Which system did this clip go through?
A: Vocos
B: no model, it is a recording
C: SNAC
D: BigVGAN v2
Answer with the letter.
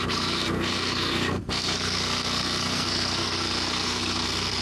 C